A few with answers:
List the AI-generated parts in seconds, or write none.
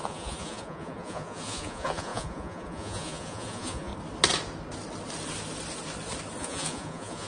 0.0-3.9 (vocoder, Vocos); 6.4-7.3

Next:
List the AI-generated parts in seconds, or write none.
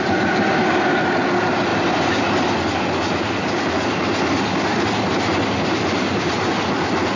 none